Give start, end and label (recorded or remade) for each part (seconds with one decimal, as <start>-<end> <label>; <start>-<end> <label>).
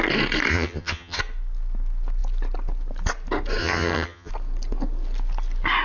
0.0-0.5 recorded; 0.5-1.2 remade; 1.2-3.6 recorded; 3.6-4.3 remade; 4.3-5.8 recorded